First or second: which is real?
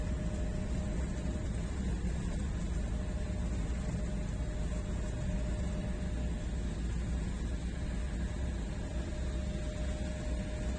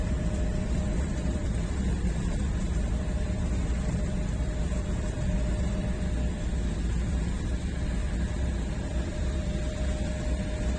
first